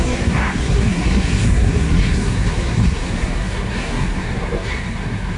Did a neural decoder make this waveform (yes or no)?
yes